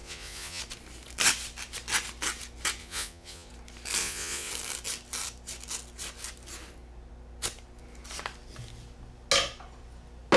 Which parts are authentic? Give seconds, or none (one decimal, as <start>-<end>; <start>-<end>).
0.6-2.8; 3.5-4.0; 4.5-10.4

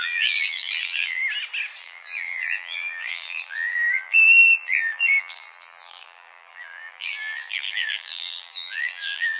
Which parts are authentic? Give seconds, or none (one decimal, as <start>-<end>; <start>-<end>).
1.2-1.8

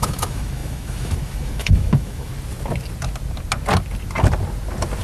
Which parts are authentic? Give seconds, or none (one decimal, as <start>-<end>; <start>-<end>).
2.3-5.0